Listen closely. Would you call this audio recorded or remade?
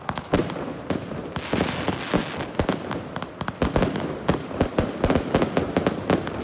recorded